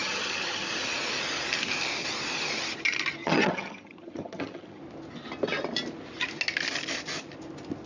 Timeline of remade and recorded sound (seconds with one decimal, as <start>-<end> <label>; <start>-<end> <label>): 0.0-0.7 remade; 0.7-3.2 recorded; 3.2-4.8 remade; 4.8-7.9 recorded